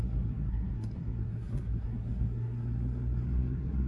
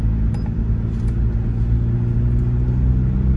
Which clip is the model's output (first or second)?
first